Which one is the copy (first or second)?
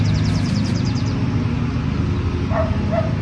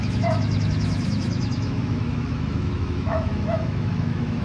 second